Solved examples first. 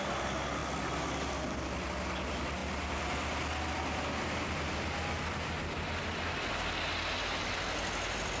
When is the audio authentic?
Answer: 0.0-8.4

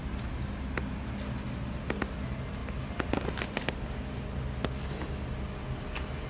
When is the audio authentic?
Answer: 0.0-6.3

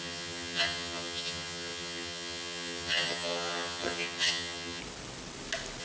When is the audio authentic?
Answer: 4.8-5.8

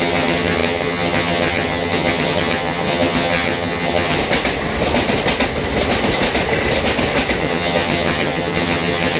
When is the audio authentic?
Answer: 4.2-7.4

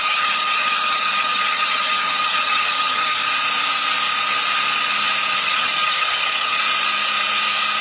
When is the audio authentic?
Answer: 3.2-5.4; 6.6-7.8